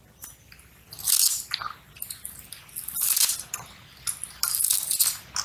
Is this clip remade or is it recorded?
recorded